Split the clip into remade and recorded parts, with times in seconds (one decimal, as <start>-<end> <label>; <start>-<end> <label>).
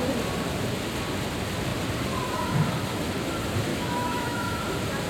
0.0-3.7 recorded; 3.7-4.6 remade; 4.6-5.1 recorded